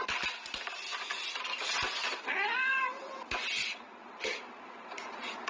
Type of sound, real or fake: real